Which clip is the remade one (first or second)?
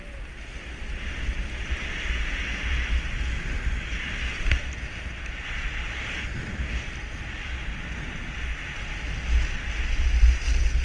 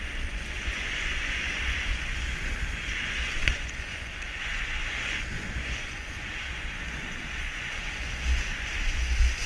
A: second